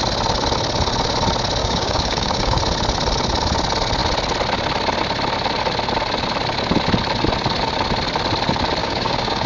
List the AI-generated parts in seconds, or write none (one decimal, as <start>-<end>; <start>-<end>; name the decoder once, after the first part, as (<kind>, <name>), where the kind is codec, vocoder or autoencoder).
1.6-2.6 (codec, DAC); 8.8-9.5